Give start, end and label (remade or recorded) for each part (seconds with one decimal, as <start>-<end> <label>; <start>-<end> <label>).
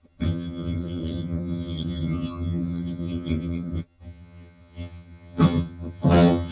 0.0-6.5 remade